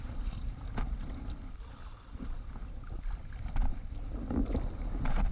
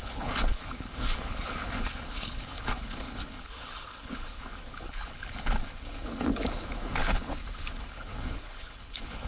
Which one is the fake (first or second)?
second